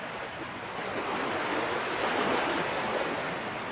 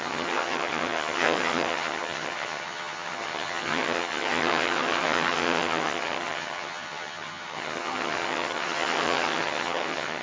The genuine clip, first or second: first